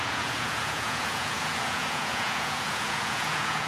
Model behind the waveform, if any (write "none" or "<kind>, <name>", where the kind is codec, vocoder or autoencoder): vocoder, Vocos